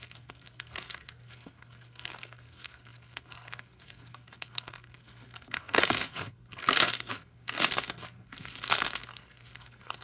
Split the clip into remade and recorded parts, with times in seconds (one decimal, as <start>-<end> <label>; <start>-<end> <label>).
0.0-10.0 remade